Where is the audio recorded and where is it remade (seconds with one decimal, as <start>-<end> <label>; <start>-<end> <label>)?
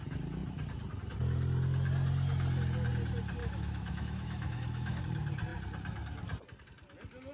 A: 0.0-3.4 recorded; 3.4-5.0 remade; 5.0-7.3 recorded